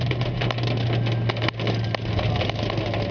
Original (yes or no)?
yes